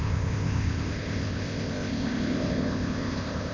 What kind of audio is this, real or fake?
fake